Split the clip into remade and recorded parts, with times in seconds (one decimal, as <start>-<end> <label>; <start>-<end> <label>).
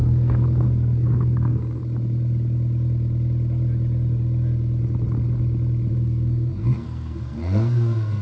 0.0-1.8 remade; 1.8-5.9 recorded; 5.9-8.2 remade